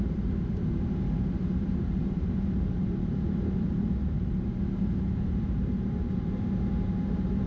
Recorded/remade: remade